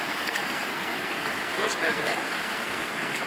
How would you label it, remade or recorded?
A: remade